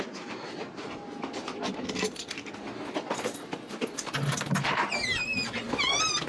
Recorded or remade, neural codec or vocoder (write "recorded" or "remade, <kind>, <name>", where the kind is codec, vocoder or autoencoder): recorded